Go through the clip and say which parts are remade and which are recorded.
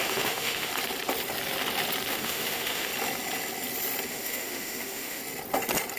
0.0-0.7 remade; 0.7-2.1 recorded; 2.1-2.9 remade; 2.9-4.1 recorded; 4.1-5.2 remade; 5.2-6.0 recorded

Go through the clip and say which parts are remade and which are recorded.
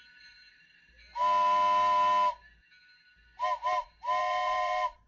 0.0-1.1 remade; 1.1-4.2 recorded; 4.2-5.1 remade